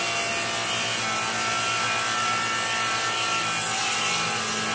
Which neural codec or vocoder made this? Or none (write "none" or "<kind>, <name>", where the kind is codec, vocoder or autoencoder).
none